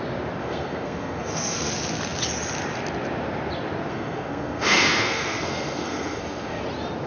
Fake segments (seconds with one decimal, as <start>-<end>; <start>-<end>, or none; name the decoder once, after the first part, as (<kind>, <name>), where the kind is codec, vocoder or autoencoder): 0.4-1.7 (codec, SNAC); 3.9-6.6